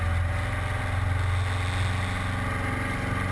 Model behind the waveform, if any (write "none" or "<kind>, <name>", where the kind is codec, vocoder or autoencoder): none